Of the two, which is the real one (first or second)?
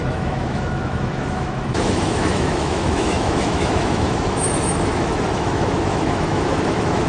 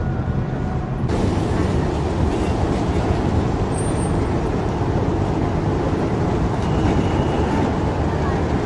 second